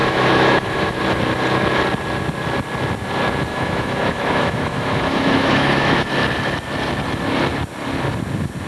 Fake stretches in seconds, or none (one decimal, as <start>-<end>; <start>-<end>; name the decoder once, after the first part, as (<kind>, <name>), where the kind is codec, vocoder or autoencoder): 0.0-1.0 (autoencoder, DAC-VAE); 3.5-6.1